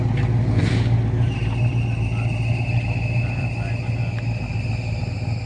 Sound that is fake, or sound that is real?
real